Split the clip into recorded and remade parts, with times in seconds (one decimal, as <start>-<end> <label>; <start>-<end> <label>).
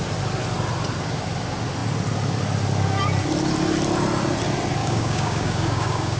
0.0-4.8 recorded; 4.8-6.2 remade